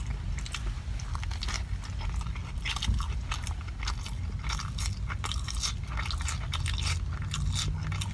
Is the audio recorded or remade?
recorded